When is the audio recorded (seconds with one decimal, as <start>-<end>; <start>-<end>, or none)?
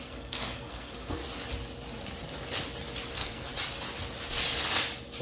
1.2-3.1; 3.5-5.2